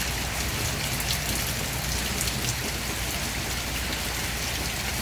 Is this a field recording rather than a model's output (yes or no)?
yes